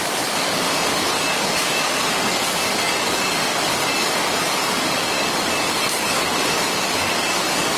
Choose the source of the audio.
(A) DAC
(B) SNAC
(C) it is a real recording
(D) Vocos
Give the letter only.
A